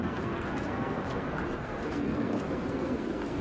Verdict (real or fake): fake